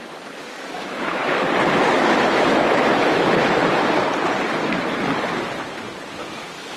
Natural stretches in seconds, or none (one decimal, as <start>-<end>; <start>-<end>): 0.0-0.5; 1.2-1.9; 3.6-6.3